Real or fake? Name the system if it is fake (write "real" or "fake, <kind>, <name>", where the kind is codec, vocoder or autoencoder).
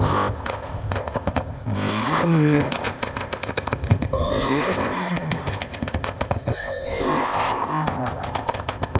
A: fake, codec, ZipCodec